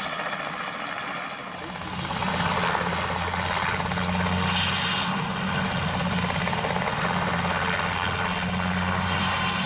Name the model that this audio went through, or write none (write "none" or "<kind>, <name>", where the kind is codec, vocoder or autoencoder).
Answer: none